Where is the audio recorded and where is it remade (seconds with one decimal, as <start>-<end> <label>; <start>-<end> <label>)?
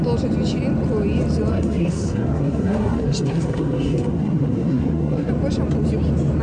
0.0-1.5 recorded; 1.5-5.3 remade; 5.3-6.4 recorded